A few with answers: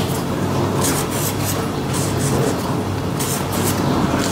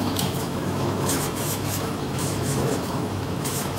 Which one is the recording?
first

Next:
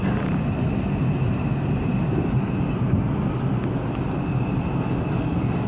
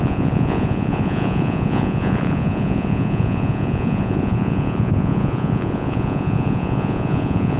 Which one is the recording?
first